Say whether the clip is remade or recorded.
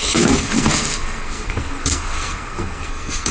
remade